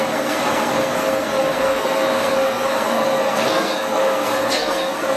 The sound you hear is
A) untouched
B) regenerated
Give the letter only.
B